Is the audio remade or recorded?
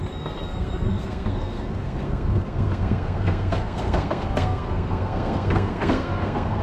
remade